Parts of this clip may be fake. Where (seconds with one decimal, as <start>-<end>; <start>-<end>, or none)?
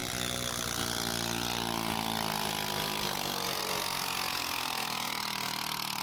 none